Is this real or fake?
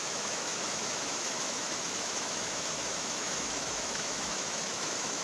fake